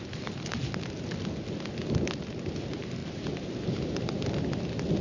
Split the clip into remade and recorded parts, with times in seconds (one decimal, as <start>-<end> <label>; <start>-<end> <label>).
0.0-3.0 recorded; 3.0-3.5 remade; 3.5-5.0 recorded